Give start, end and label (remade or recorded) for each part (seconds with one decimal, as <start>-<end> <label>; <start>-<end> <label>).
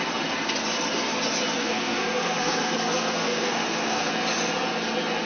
0.0-1.6 recorded; 1.6-4.1 remade; 4.1-5.2 recorded